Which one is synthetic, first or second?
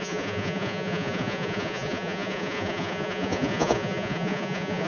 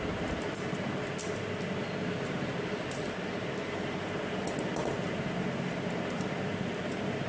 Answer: first